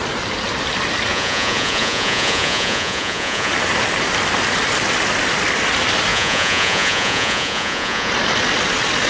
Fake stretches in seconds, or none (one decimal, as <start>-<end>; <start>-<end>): 1.1-3.5; 6.1-8.1